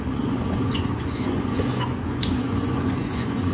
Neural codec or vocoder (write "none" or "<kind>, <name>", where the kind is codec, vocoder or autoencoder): vocoder, Vocos